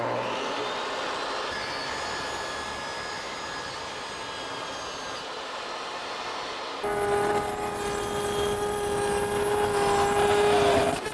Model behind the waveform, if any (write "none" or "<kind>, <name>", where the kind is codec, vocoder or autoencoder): none